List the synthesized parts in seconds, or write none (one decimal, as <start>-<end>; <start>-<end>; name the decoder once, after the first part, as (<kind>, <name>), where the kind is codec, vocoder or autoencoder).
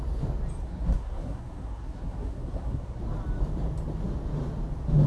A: 0.6-3.0 (codec, SNAC)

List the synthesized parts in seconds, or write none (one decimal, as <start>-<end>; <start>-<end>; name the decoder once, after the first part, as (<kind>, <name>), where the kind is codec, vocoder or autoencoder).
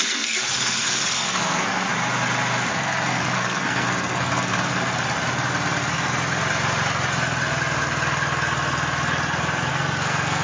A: 0.0-1.9 (codec, SNAC); 2.7-4.7; 9.7-10.4